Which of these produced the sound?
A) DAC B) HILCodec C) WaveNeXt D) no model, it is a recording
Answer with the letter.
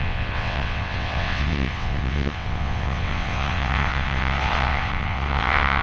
C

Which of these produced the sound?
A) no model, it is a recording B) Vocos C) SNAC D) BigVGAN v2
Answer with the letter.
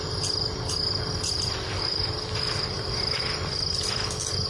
A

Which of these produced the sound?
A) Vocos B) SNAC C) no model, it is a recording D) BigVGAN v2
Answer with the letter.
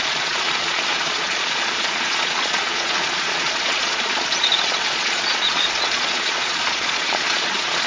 A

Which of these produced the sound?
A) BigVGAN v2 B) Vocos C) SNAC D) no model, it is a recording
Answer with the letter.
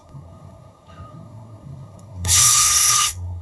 C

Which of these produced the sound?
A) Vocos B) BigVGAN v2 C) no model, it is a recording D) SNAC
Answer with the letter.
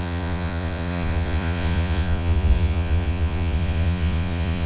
A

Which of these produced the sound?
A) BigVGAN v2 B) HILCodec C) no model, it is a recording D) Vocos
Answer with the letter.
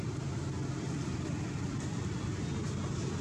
C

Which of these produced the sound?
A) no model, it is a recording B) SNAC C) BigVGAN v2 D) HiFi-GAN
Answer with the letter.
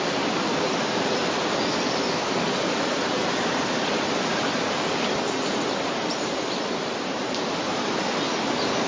C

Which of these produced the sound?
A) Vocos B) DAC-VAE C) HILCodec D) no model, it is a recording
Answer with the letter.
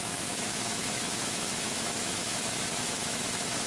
B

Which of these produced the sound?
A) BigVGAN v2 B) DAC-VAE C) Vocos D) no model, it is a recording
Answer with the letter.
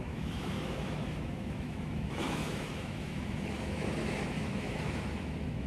B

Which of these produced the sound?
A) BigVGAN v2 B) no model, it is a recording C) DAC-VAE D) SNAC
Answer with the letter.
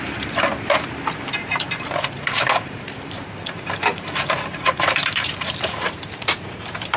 A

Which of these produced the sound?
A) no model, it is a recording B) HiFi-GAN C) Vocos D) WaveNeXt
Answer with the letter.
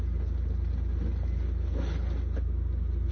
A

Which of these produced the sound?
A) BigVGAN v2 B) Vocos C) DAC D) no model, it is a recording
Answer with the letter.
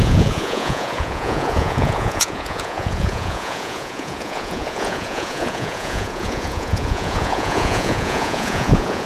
B